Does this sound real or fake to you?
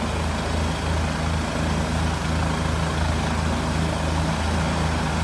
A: real